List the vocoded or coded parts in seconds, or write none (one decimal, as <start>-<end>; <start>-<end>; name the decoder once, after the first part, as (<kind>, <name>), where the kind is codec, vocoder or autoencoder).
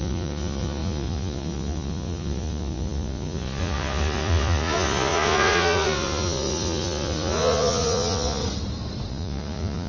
0.0-8.4 (vocoder, Vocos); 9.1-9.9